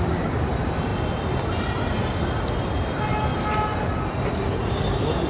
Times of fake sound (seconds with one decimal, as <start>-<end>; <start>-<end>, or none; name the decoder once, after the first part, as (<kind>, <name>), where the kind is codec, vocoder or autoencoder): none